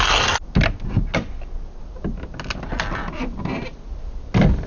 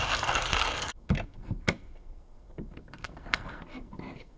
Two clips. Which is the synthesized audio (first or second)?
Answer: second